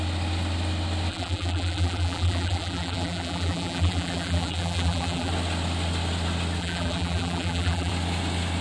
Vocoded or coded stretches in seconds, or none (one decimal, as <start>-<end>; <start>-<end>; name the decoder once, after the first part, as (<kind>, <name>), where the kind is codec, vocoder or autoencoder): 1.1-5.3 (vocoder, BigVGAN v2); 6.6-7.9

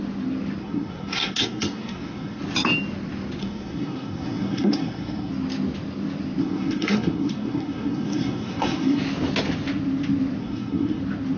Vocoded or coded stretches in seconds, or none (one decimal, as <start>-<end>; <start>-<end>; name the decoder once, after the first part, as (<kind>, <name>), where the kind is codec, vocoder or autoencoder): 0.6-2.4 (codec, SNAC); 3.4-5.3; 6.4-9.0; 10.4-11.0

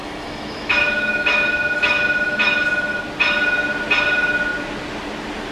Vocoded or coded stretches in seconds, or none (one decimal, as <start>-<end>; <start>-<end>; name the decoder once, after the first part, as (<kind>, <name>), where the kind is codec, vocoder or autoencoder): 0.0-3.0 (autoencoder, DAC-VAE)

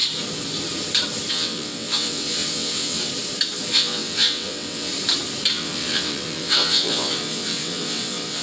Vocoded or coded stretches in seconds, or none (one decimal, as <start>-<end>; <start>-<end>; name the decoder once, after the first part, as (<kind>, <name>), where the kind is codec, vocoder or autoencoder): 1.3-3.1 (vocoder, WaveNeXt); 3.7-4.9; 5.5-8.4

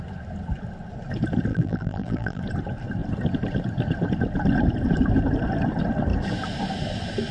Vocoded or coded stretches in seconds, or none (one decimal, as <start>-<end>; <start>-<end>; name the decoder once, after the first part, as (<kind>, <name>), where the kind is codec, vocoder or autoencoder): 1.5-2.4 (vocoder, BigVGAN v2)

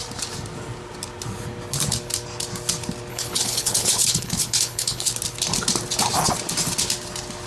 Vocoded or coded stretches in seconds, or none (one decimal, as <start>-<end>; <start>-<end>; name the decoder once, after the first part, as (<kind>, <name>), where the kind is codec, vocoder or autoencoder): 3.1-5.1 (codec, HILCodec)

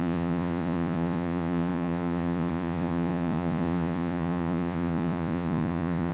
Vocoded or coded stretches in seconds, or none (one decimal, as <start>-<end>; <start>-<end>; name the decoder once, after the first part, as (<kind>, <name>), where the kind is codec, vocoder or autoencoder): 0.0-6.1 (vocoder, Vocos)

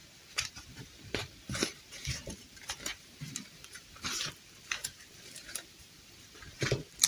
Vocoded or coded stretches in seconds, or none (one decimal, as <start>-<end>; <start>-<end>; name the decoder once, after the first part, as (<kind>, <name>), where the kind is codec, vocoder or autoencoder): 0.0-4.3 (vocoder, BigVGAN v2); 4.8-6.6